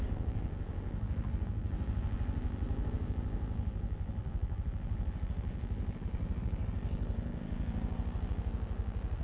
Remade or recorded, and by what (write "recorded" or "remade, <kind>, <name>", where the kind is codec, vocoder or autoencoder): remade, vocoder, BigVGAN v2